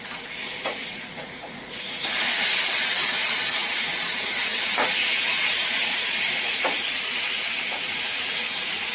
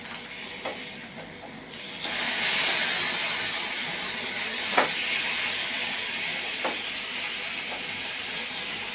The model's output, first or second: first